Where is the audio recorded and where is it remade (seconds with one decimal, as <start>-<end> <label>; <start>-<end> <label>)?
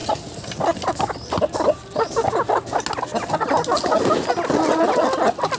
0.0-5.6 recorded